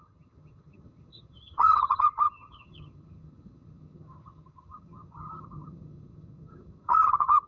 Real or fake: fake